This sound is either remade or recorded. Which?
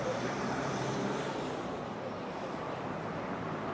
remade